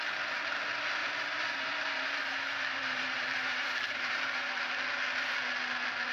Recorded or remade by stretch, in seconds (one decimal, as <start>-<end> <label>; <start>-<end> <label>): 0.0-1.0 recorded; 1.0-4.7 remade; 4.7-6.1 recorded